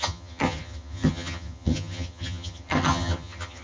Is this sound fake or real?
fake